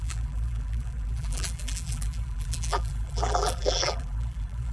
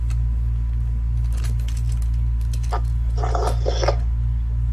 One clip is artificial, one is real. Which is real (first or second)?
second